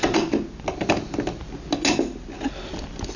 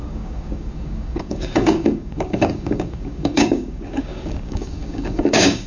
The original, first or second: first